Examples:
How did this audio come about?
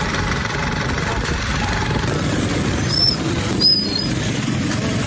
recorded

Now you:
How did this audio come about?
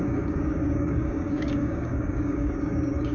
remade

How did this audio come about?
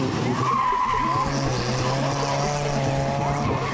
recorded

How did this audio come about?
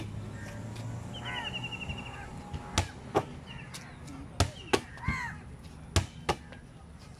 recorded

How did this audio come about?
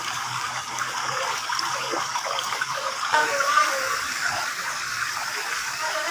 remade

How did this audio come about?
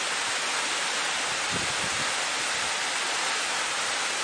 recorded